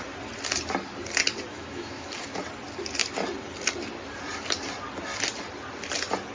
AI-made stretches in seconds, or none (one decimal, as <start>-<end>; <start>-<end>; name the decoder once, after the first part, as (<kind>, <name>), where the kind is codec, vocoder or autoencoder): 1.5-2.1 (autoencoder, DAC-VAE)